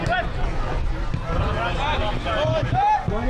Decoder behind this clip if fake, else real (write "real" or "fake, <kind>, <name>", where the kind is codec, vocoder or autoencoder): real